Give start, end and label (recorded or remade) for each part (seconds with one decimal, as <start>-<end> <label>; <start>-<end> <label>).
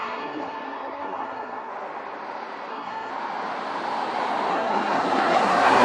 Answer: 0.0-1.7 remade; 1.7-2.7 recorded; 2.7-3.1 remade; 3.1-4.5 recorded; 4.5-5.8 remade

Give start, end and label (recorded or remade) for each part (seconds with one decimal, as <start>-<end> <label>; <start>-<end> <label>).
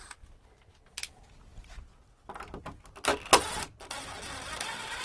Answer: 0.0-5.0 recorded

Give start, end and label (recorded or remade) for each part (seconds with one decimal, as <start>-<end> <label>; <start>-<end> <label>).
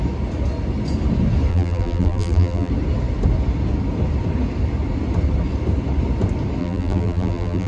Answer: 0.0-1.5 recorded; 1.5-2.7 remade; 2.7-6.6 recorded; 6.6-7.7 remade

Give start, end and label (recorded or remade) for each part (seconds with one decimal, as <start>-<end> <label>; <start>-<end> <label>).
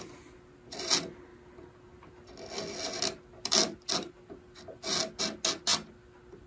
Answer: 0.0-6.5 recorded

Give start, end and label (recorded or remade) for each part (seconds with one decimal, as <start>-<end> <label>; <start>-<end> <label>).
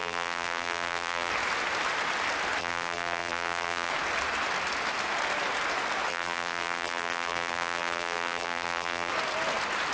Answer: 0.0-1.3 remade; 1.3-2.6 recorded; 2.6-3.9 remade; 3.9-6.1 recorded; 6.1-9.1 remade; 9.1-9.9 recorded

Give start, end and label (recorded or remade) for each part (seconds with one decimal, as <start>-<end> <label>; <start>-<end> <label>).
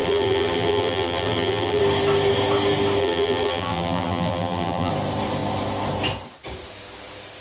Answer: 0.0-1.8 remade; 1.8-3.0 recorded; 3.0-4.9 remade; 4.9-7.4 recorded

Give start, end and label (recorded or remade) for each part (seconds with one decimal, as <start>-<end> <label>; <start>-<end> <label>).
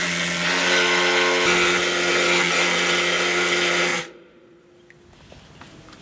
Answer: 0.0-3.9 recorded; 3.9-4.6 remade; 4.6-6.0 recorded